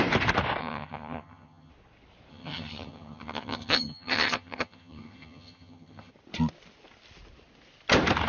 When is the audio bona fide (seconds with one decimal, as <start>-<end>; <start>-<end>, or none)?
0.0-0.6; 1.7-2.3; 6.1-8.3